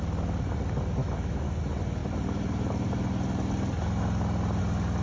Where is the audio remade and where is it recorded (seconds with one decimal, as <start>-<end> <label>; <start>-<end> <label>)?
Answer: 0.0-1.0 recorded; 1.0-1.6 remade; 1.6-5.0 recorded